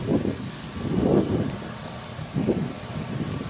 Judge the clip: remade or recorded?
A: recorded